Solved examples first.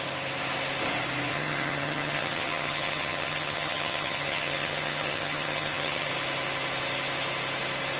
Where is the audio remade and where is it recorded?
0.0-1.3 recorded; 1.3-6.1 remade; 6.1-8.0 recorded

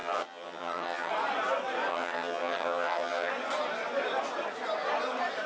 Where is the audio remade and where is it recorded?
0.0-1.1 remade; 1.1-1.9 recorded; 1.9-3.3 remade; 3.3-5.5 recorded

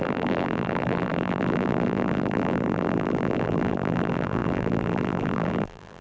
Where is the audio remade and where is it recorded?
0.0-6.0 remade